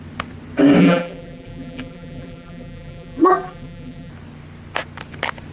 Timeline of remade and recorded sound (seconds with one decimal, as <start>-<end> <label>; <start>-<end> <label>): 0.0-0.8 recorded; 0.8-4.1 remade; 4.1-5.5 recorded